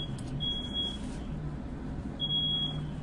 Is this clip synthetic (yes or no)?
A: no